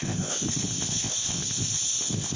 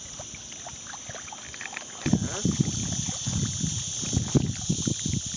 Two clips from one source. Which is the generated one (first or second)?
first